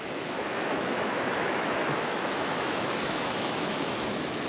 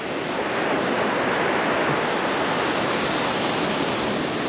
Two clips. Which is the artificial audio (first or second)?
first